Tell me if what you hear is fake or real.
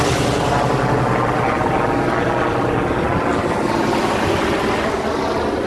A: real